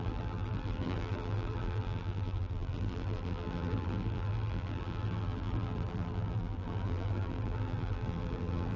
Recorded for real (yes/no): no